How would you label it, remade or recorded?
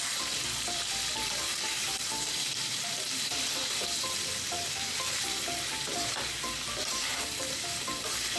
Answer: remade